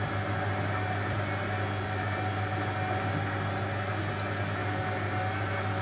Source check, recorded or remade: recorded